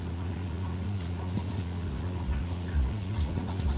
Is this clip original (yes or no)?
no